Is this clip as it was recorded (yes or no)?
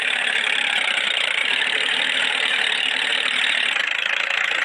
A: no